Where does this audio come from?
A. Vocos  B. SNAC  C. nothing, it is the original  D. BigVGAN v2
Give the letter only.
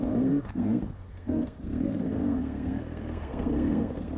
B